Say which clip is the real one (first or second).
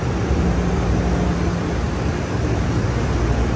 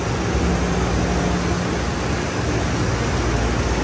second